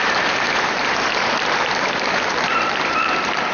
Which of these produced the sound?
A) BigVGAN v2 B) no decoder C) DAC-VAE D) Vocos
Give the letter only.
A